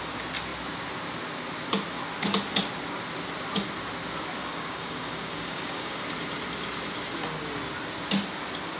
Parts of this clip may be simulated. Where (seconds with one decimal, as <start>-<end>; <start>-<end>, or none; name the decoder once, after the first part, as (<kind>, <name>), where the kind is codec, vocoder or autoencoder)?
4.4-6.0 (codec, DAC)